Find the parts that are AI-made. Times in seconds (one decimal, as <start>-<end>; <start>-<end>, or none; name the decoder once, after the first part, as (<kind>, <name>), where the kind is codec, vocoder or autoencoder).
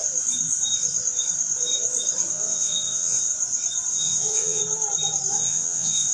2.3-3.3 (vocoder, WaveNeXt); 3.9-4.6; 5.3-6.1